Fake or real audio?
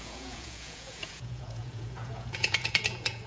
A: fake